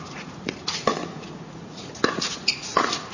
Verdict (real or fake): fake